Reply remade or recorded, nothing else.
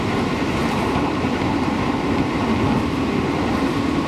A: remade